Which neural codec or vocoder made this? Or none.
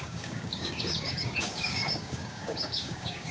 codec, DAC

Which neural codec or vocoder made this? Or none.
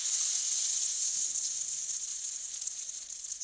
vocoder, Vocos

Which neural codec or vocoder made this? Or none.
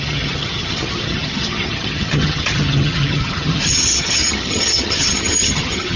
vocoder, HiFi-GAN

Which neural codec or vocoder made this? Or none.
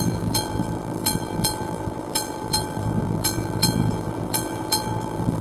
vocoder, BigVGAN v2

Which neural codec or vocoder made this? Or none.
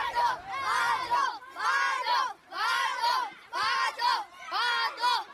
none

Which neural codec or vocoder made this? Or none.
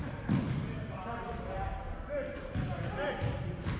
vocoder, BigVGAN v2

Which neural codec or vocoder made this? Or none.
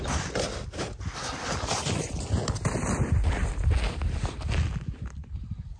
none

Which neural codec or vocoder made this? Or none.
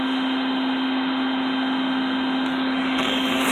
none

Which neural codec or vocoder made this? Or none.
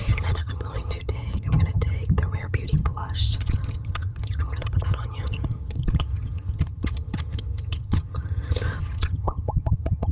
vocoder, HiFi-GAN